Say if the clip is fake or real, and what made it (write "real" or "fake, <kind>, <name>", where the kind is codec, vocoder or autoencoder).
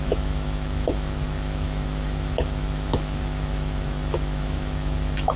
fake, autoencoder, DAC-VAE